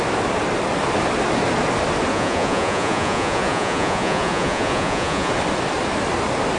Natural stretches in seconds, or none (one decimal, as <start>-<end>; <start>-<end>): 0.0-2.1; 5.3-6.6